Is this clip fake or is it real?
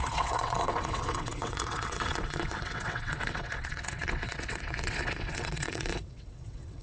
fake